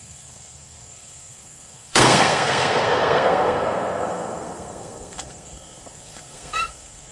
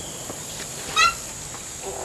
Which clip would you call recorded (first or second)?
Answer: second